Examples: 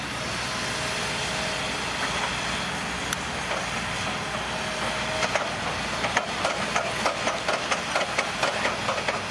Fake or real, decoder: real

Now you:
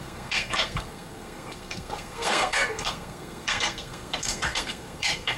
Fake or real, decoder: fake, codec, SNAC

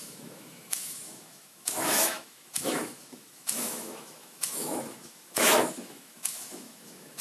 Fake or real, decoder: fake, autoencoder, DAC-VAE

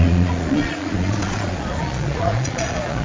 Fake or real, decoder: fake, vocoder, Vocos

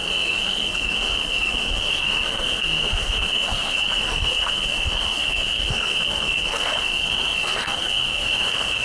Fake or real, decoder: fake, codec, SNAC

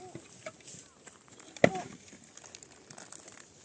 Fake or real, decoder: real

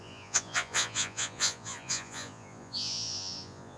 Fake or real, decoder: fake, vocoder, Vocos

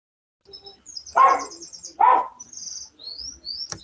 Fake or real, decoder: real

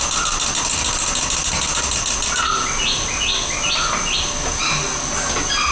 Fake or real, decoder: real